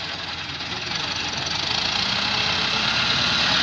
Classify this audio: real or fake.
real